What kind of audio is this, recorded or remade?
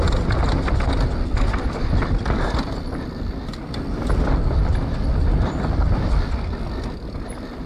recorded